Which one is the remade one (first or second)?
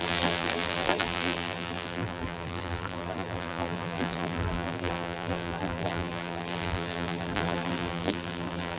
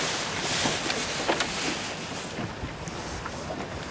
first